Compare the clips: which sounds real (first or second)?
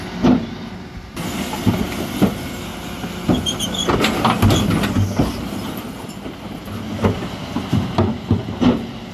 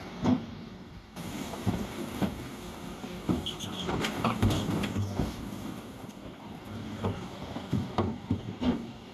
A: first